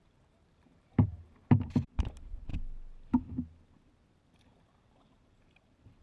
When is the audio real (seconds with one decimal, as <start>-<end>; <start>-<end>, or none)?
2.5-5.0